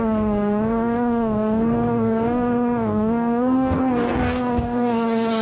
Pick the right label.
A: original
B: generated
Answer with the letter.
B